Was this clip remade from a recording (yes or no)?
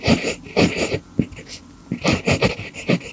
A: no